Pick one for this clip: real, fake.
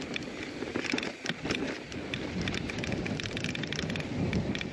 fake